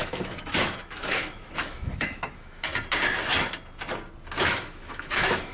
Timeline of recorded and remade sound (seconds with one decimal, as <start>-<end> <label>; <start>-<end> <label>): 0.0-2.7 remade; 2.7-4.4 recorded; 4.4-5.5 remade